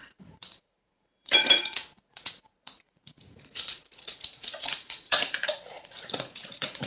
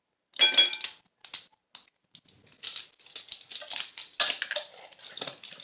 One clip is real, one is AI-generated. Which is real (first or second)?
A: second